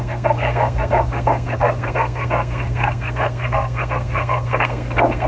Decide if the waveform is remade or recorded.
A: remade